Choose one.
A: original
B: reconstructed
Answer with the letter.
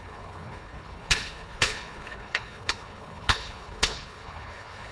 B